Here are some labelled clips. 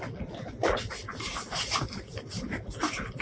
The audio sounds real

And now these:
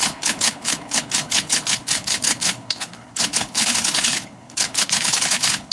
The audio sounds fake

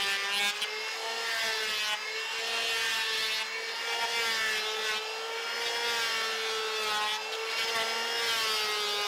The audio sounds real